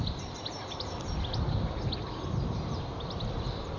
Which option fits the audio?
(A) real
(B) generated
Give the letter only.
A